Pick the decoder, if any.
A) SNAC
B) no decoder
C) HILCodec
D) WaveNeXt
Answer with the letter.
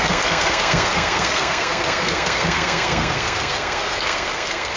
A